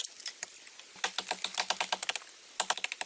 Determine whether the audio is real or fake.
real